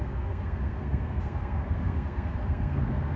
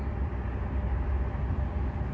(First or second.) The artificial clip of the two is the first